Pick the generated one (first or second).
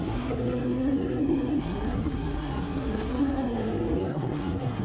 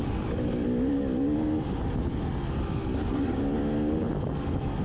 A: first